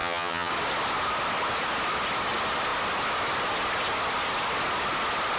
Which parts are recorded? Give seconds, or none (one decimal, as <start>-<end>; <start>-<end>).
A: 0.5-5.4